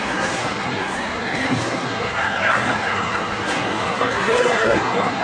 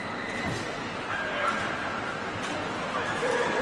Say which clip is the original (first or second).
second